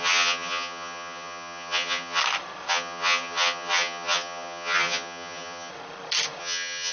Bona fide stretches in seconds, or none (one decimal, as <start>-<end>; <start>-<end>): 2.2-2.7; 5.7-6.4